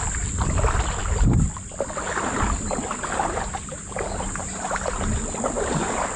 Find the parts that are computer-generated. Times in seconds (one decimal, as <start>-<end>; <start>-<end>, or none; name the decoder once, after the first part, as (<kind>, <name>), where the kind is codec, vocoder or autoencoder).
none